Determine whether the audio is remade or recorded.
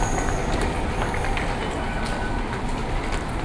recorded